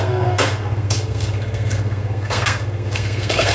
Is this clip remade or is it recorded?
remade